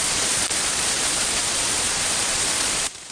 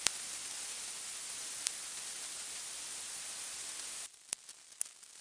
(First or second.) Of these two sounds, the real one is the second